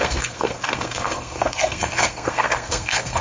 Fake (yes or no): yes